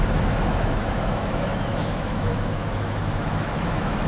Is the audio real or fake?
fake